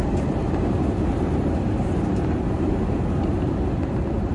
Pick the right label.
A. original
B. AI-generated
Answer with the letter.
B